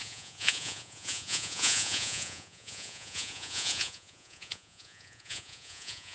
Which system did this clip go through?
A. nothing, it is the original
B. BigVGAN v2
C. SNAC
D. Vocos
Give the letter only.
D